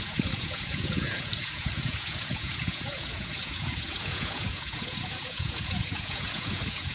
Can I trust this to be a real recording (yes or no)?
no